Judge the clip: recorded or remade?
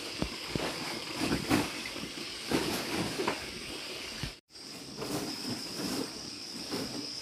remade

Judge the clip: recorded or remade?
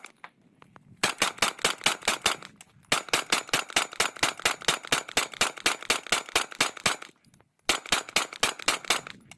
recorded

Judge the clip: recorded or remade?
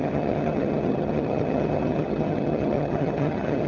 remade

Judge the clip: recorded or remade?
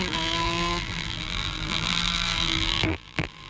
remade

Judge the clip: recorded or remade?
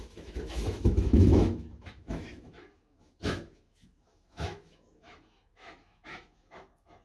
remade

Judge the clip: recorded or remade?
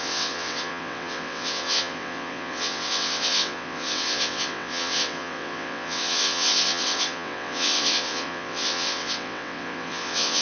remade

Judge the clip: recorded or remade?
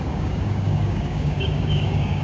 remade